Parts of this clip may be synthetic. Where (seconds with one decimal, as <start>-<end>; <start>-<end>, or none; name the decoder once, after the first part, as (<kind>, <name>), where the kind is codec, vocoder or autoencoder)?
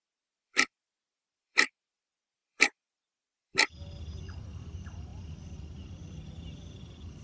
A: 0.0-7.2 (vocoder, BigVGAN v2)